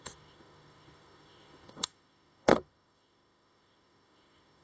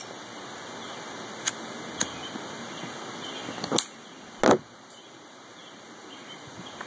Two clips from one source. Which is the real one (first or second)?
second